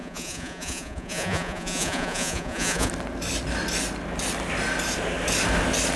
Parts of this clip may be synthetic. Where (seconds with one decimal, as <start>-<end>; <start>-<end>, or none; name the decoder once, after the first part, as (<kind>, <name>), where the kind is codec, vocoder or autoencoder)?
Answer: 0.0-2.9 (vocoder, Vocos)